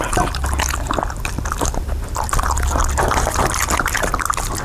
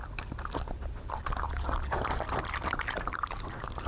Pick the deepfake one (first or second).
second